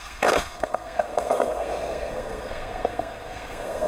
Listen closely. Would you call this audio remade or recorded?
remade